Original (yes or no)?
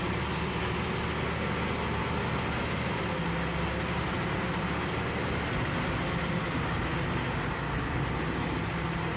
yes